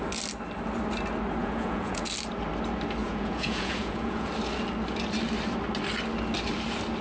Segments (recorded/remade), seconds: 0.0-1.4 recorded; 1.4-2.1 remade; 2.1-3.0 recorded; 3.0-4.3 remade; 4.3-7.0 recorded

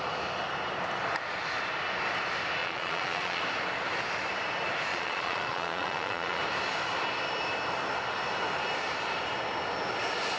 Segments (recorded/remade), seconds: 0.0-2.6 recorded; 2.6-3.4 remade; 3.4-4.9 recorded; 4.9-6.4 remade; 6.4-10.4 recorded

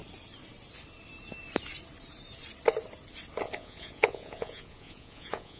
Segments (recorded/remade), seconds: 0.0-3.4 recorded; 3.4-5.6 remade

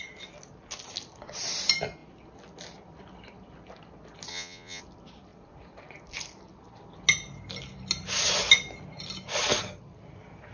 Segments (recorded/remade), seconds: 0.0-4.3 recorded; 4.3-4.8 remade; 4.8-10.5 recorded

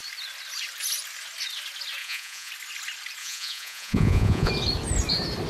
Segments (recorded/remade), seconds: 0.0-2.0 recorded; 2.0-2.5 remade; 2.5-3.2 recorded; 3.2-4.5 remade; 4.5-5.5 recorded